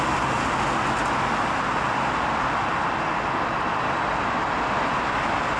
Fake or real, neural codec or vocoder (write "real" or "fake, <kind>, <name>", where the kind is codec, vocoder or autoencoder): real